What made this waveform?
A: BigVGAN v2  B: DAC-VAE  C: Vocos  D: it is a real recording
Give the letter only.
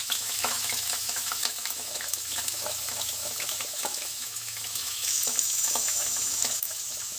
B